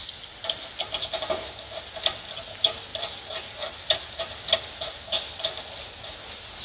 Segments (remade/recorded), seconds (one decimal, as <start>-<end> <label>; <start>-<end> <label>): 0.0-6.6 recorded

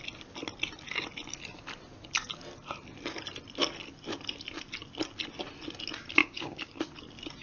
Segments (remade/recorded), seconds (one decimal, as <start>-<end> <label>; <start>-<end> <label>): 0.0-6.2 recorded; 6.2-6.8 remade; 6.8-7.4 recorded

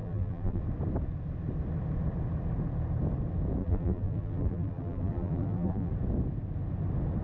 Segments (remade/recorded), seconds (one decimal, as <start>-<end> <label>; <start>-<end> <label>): 0.0-0.6 remade; 0.6-3.6 recorded; 3.6-5.9 remade; 5.9-7.2 recorded

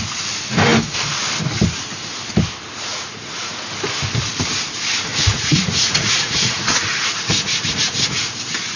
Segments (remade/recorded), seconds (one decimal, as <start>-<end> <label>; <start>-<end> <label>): 0.0-2.9 recorded; 2.9-3.5 remade; 3.5-5.1 recorded; 5.1-8.4 remade; 8.4-8.8 recorded

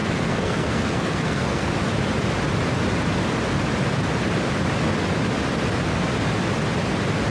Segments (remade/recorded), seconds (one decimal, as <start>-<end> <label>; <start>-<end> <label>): 0.0-1.7 remade; 1.7-7.3 recorded

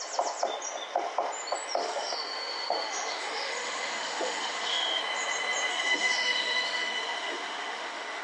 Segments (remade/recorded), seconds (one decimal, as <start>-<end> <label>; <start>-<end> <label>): 0.0-1.8 recorded; 1.8-5.0 remade; 5.0-5.7 recorded; 5.7-8.2 remade

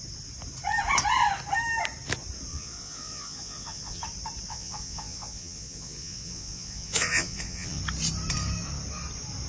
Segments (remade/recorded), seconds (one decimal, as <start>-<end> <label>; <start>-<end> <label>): 0.0-2.5 recorded; 2.5-4.0 remade; 4.0-4.5 recorded; 4.5-7.8 remade; 7.8-9.5 recorded

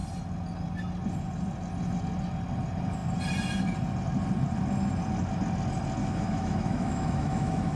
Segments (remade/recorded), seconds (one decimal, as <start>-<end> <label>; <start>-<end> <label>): 0.0-6.0 recorded; 6.0-7.8 remade